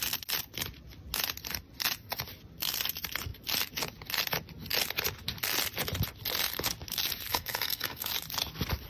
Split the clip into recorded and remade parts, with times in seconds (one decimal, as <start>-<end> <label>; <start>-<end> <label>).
0.0-7.3 recorded; 7.3-8.1 remade; 8.1-8.9 recorded